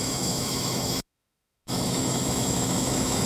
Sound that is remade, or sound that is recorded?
remade